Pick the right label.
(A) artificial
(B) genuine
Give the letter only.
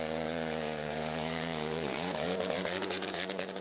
A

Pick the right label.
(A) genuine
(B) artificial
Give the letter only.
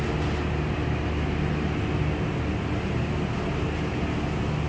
A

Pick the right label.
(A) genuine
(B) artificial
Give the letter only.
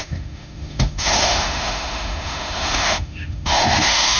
B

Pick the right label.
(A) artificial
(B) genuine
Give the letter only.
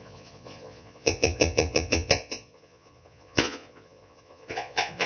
A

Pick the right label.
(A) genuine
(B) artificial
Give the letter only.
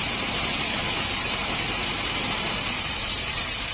B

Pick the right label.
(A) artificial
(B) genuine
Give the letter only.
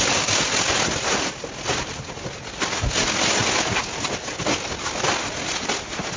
B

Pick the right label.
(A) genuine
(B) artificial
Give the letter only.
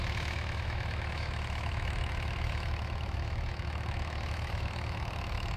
B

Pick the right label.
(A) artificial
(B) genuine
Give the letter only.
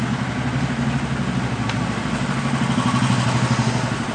B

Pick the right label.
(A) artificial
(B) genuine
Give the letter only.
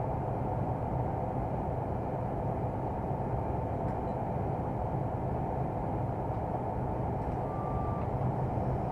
B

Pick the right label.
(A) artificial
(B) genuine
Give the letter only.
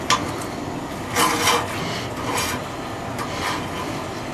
B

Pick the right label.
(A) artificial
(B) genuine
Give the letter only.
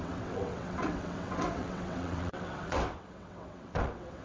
A